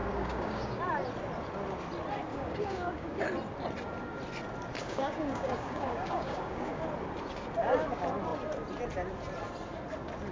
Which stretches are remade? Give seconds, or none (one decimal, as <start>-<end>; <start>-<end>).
0.0-0.8; 2.3-3.2; 4.8-6.8